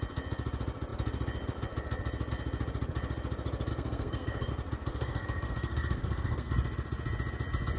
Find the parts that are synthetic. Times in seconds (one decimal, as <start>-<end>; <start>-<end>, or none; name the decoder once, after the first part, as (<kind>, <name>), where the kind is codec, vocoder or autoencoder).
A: 3.7-4.5 (codec, SNAC); 4.9-6.5

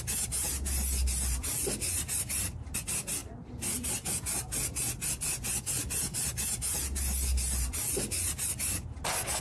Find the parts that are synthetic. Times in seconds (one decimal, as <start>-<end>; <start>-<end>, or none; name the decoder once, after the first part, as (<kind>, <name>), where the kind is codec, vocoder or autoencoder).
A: none

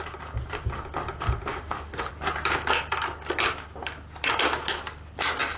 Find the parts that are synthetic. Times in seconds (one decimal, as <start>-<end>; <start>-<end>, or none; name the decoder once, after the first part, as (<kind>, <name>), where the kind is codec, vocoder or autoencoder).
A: 1.5-2.1 (autoencoder, DAC-VAE)

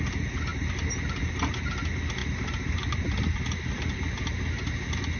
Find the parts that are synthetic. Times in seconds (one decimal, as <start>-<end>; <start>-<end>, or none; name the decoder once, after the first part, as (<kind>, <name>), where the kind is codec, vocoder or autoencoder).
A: none

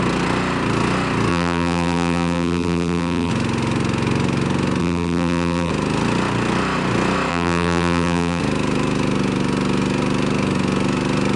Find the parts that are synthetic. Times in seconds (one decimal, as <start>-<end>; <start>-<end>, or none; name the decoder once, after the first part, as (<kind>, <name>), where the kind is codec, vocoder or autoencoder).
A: 1.3-3.3 (vocoder, BigVGAN v2); 4.8-5.7; 7.3-8.4

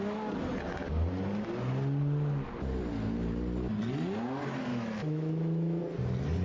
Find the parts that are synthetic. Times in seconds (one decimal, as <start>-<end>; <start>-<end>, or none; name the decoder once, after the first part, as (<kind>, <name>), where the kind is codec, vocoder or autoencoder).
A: 4.7-5.8 (autoencoder, DAC-VAE)

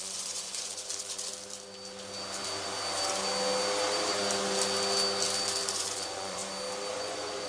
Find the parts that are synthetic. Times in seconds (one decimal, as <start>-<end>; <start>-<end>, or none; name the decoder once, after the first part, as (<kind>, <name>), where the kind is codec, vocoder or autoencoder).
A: 0.0-1.3 (vocoder, Vocos); 5.7-6.4; 6.9-7.5

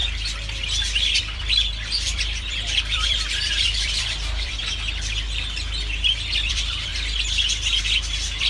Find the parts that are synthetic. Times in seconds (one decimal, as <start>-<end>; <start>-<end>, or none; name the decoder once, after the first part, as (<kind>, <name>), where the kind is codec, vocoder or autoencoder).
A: 1.2-4.6 (vocoder, BigVGAN v2); 6.5-6.9; 7.8-8.5